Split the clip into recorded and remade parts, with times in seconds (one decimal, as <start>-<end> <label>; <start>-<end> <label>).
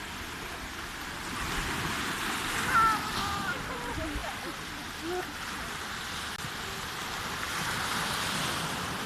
0.0-9.1 recorded